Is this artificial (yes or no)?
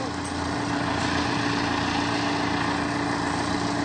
no